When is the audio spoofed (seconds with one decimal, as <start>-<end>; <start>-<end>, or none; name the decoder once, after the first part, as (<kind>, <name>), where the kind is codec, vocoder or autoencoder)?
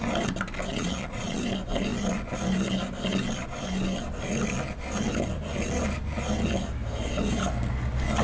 0.7-1.4 (vocoder, Vocos)